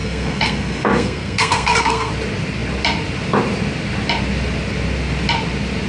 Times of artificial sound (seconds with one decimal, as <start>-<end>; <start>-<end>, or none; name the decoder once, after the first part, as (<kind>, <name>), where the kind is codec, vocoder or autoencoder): 0.0-2.1 (codec, SNAC)